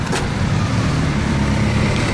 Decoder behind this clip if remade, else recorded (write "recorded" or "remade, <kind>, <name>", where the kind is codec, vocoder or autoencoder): remade, vocoder, BigVGAN v2